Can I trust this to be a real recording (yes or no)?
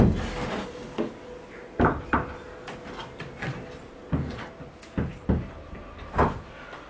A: yes